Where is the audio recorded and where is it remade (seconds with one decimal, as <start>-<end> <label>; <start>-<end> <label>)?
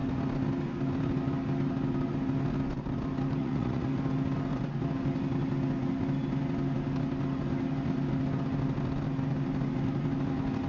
0.0-3.4 recorded; 3.4-3.9 remade; 3.9-10.7 recorded